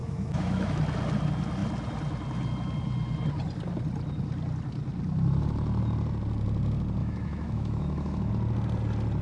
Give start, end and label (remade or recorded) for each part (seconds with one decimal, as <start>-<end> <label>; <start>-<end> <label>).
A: 0.0-0.8 remade; 0.8-7.0 recorded; 7.0-8.3 remade; 8.3-9.2 recorded